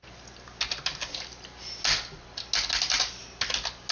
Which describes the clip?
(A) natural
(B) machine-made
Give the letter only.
A